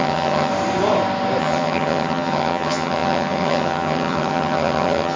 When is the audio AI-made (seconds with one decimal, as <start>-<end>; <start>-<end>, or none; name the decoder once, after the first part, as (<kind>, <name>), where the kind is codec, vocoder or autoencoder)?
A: 0.0-0.5 (vocoder, HiFi-GAN); 1.4-5.2